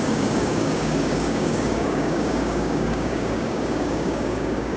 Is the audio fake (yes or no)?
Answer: yes